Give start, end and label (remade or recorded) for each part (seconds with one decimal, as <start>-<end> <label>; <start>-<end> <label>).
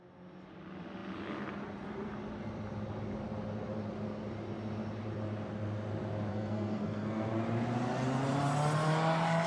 0.0-6.3 recorded; 6.3-7.3 remade; 7.3-9.5 recorded